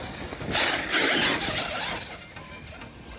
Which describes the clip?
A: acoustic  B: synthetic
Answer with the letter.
A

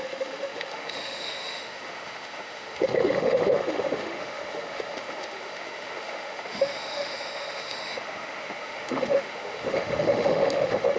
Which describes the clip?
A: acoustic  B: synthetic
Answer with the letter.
B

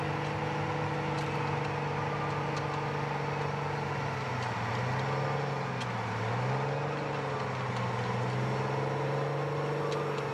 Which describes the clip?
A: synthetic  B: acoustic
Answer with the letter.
B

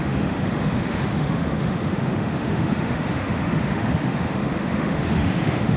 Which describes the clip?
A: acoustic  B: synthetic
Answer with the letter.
B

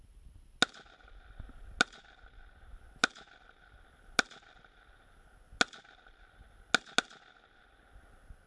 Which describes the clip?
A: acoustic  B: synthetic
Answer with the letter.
A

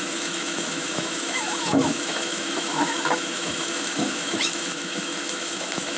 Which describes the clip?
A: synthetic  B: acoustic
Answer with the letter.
A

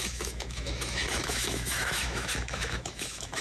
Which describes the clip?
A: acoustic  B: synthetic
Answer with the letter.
B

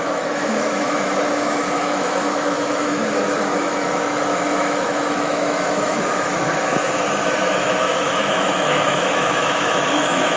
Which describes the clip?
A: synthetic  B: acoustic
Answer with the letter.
A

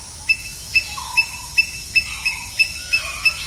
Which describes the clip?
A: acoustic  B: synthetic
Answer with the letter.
B